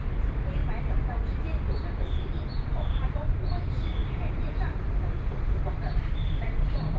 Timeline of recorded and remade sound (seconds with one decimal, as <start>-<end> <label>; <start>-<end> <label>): 0.0-6.2 recorded; 6.2-7.0 remade